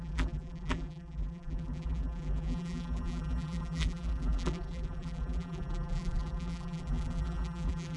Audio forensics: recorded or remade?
remade